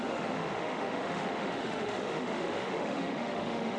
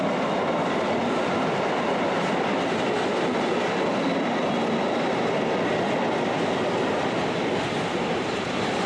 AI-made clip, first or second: first